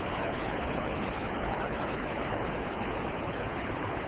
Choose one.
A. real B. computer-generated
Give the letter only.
B